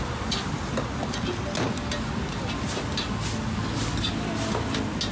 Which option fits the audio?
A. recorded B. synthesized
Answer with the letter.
A